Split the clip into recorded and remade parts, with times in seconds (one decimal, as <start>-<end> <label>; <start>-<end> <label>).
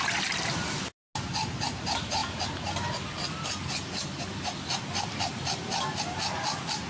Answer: 0.0-6.9 recorded